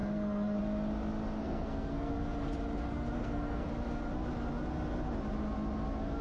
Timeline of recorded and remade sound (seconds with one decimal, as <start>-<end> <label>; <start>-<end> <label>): 0.0-0.6 remade; 0.6-1.4 recorded; 1.4-2.1 remade; 2.1-2.9 recorded; 2.9-3.7 remade; 3.7-6.2 recorded